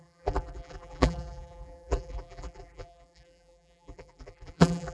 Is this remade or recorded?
remade